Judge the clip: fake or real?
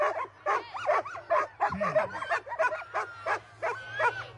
real